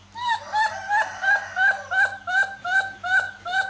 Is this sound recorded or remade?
recorded